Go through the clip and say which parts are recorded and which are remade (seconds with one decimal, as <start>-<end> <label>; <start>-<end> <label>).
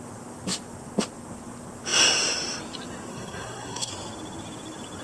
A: 0.0-3.1 recorded; 3.1-3.9 remade; 3.9-5.0 recorded